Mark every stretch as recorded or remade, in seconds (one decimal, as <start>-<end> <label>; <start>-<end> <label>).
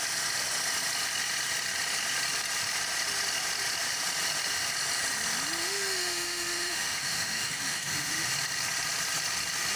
0.0-5.6 recorded; 5.6-8.3 remade; 8.3-9.8 recorded